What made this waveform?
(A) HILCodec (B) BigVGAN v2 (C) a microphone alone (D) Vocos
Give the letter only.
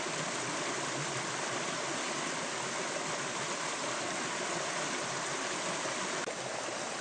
C